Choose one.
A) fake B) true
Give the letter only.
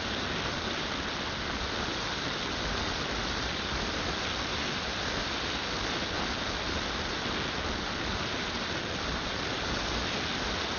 B